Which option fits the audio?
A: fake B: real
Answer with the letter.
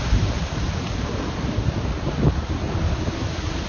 A